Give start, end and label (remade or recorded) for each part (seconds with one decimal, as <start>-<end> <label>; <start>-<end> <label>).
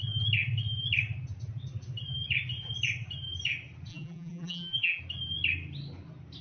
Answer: 0.0-3.9 recorded; 3.9-5.0 remade; 5.0-6.4 recorded